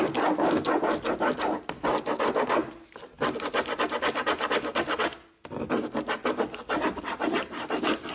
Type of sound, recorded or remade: recorded